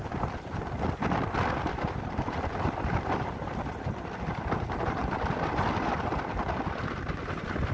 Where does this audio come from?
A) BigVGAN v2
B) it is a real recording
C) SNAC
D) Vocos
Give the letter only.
A